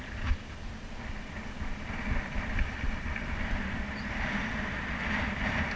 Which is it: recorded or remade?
recorded